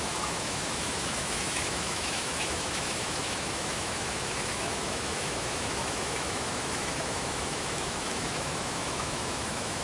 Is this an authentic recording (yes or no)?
no